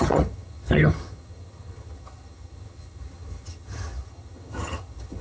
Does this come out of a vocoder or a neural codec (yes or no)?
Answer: yes